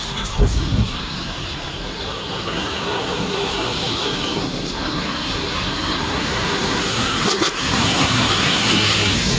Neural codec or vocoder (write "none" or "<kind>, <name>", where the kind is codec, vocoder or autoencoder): codec, SNAC